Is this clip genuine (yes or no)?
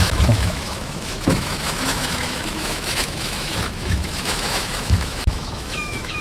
no